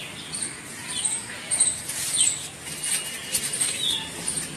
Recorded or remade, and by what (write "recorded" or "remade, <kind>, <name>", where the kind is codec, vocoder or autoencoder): recorded